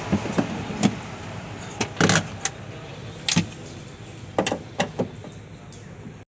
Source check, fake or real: real